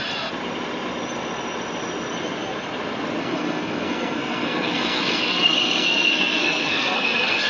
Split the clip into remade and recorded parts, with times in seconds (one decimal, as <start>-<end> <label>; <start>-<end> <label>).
0.0-3.2 recorded; 3.2-7.5 remade